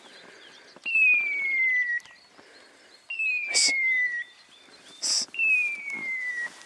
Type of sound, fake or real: real